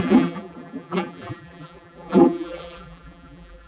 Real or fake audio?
fake